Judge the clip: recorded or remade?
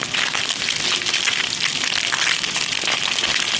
recorded